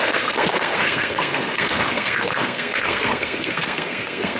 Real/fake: fake